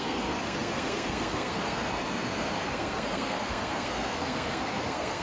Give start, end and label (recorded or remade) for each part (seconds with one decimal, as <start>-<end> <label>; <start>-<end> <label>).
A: 0.0-5.2 remade